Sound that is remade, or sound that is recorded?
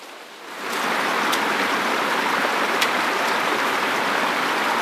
recorded